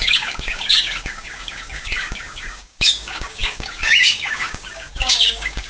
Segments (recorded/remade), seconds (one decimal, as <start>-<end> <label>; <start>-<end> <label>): 0.0-5.7 remade